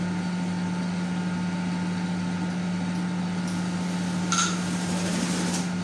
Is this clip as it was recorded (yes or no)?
yes